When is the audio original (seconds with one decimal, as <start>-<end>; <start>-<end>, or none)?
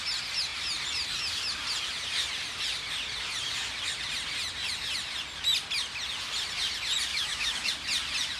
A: 0.0-7.1; 7.7-8.4